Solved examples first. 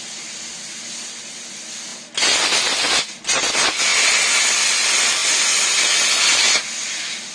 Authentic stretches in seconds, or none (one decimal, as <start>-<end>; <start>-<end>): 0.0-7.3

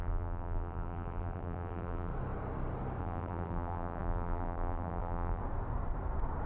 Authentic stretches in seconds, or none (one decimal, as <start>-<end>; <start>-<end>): 2.1-3.0; 5.4-6.5

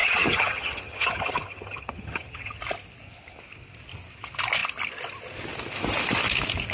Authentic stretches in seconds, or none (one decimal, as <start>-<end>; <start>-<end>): 2.6-6.7

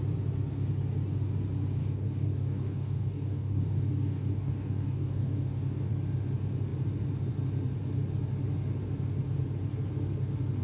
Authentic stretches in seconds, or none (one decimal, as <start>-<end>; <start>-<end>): 0.0-1.8; 5.9-10.6

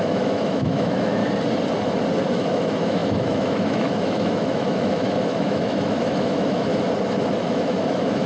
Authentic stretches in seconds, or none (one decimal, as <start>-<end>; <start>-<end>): 1.2-2.3; 6.7-7.5

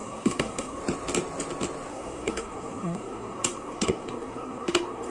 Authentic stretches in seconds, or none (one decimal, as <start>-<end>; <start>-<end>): 0.8-1.9

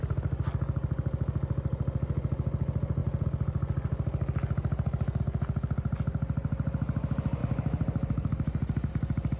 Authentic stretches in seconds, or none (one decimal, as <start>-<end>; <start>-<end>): 0.0-9.4